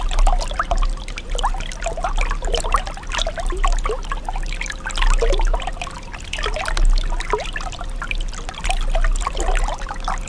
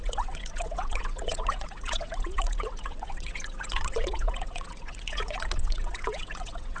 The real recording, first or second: first